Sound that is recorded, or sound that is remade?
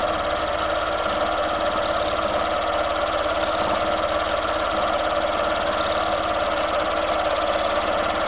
recorded